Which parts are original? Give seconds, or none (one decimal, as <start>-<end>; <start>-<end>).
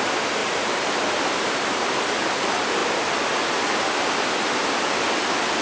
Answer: 0.0-0.4; 2.0-5.6